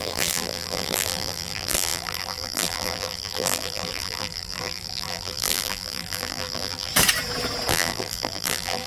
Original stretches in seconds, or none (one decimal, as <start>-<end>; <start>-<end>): 6.9-7.7